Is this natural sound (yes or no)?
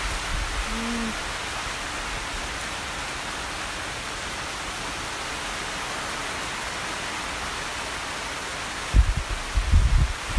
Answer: yes